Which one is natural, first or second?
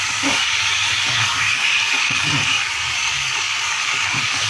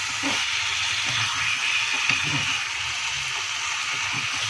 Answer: second